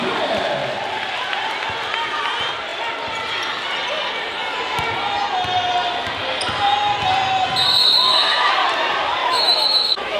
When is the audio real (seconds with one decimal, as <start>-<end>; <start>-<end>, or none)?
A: 0.0-7.8; 8.5-9.2